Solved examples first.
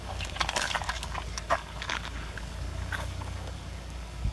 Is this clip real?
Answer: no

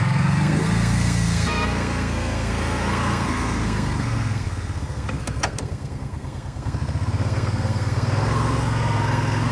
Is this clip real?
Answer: no